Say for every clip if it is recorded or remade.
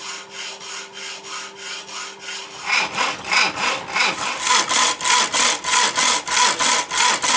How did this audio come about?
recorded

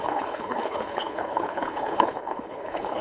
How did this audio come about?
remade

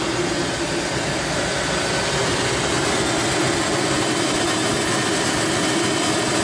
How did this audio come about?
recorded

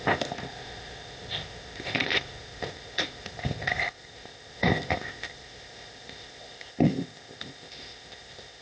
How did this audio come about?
remade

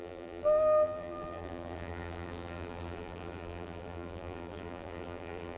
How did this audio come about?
remade